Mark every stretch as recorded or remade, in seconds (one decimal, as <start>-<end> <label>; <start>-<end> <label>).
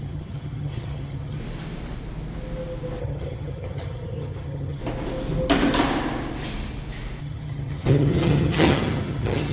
0.0-1.4 remade; 1.4-3.0 recorded; 3.0-4.8 remade; 4.8-7.2 recorded; 7.2-9.5 remade